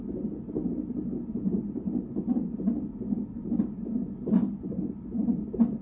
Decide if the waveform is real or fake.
real